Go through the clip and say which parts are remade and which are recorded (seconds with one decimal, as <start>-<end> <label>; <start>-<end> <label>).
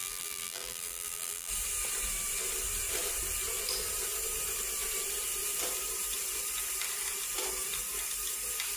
0.0-1.5 remade; 1.5-8.8 recorded